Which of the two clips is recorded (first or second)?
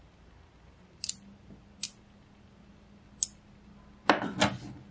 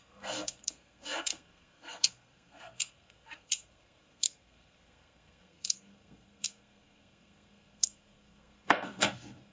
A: first